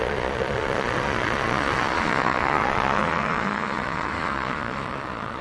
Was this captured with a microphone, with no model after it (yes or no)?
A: no